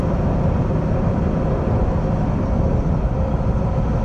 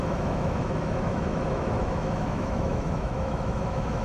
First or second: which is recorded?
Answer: first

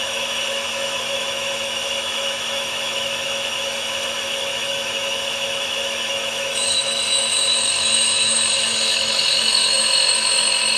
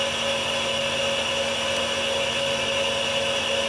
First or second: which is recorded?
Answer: second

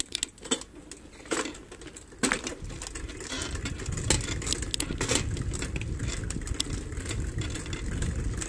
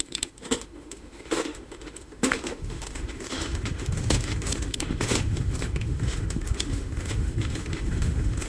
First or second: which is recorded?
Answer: first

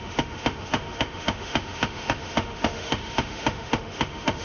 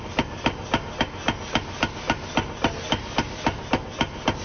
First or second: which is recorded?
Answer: second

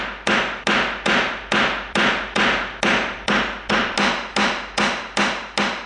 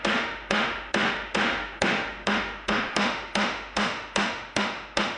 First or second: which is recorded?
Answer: first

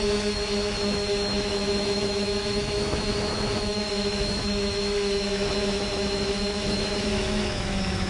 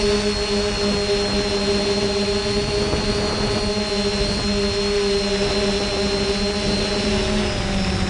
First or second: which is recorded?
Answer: second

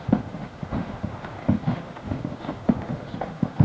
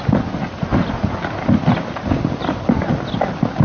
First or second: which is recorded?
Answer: second